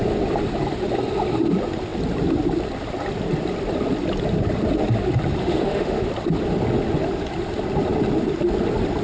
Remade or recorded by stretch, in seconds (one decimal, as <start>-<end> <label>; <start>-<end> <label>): 0.0-5.4 recorded; 5.4-6.1 remade; 6.1-9.0 recorded